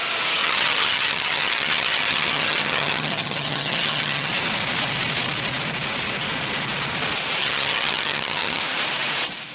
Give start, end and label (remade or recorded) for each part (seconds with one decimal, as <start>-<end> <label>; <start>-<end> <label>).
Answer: 0.0-0.4 recorded; 0.4-4.3 remade; 4.3-7.4 recorded; 7.4-8.6 remade; 8.6-9.5 recorded